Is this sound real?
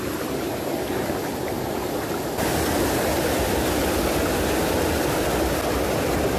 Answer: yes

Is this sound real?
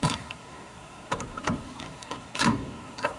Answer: no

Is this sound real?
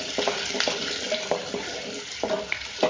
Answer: yes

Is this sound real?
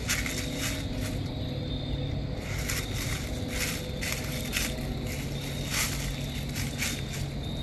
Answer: yes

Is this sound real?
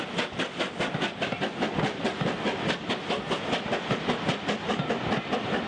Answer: yes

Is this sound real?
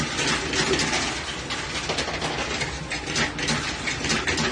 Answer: yes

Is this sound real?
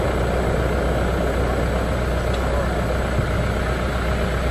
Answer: yes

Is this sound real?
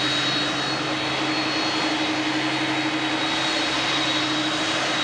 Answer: yes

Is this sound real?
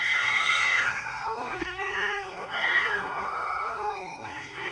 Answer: no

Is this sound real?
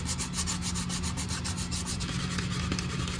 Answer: yes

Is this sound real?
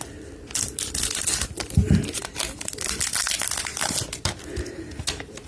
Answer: yes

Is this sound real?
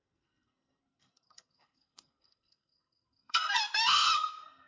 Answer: no